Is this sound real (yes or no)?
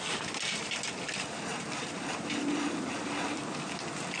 yes